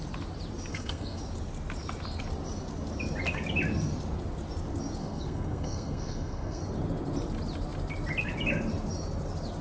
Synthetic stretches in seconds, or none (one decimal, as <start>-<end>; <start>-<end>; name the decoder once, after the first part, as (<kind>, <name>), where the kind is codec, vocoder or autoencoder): 0.7-1.2 (codec, SNAC); 5.0-6.6